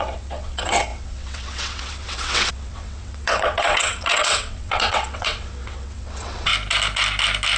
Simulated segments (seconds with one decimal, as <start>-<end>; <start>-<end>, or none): 0.0-6.5